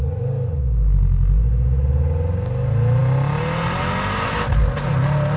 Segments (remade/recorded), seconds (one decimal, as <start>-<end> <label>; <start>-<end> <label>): 0.0-5.4 recorded